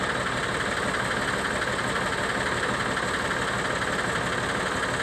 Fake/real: real